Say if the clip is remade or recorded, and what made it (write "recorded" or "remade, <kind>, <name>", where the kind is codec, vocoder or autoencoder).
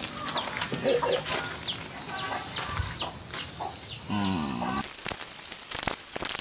recorded